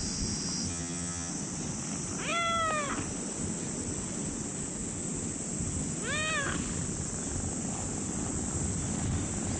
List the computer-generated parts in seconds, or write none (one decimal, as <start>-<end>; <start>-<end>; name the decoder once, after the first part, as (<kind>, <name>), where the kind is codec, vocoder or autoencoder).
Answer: 0.7-1.3 (vocoder, HiFi-GAN)